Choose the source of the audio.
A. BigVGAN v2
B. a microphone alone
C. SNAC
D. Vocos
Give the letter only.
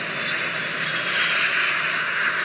B